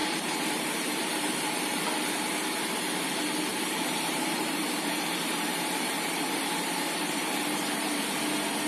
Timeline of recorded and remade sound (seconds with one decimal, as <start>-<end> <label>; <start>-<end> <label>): 0.0-1.8 remade; 1.8-3.5 recorded; 3.5-8.0 remade; 8.0-8.7 recorded